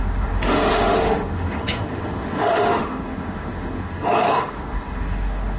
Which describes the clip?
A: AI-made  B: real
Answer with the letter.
A